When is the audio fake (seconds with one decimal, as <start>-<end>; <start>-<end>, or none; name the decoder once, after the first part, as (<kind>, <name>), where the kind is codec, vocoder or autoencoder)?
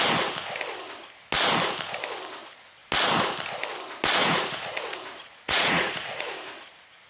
4.2-6.4 (vocoder, Vocos)